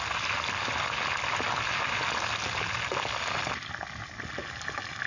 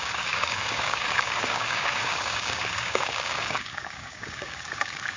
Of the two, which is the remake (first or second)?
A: second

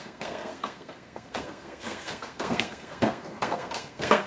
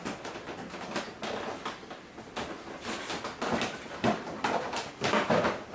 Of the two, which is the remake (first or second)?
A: first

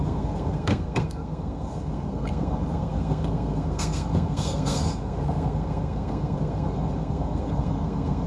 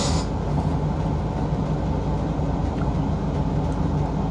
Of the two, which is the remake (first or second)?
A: first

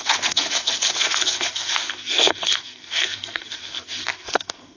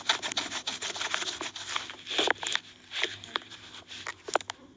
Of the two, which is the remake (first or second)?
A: first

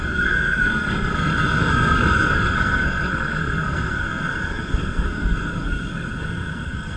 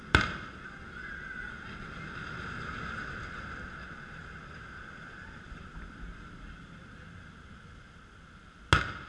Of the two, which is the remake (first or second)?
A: first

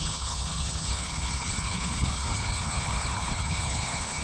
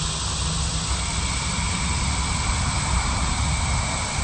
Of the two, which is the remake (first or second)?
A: first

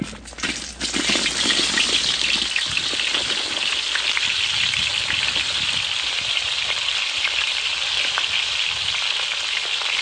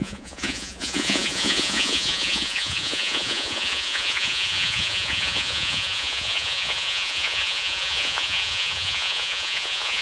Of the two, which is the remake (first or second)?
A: second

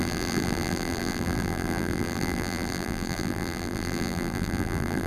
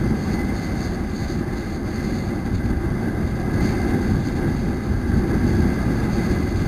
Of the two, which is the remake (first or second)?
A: first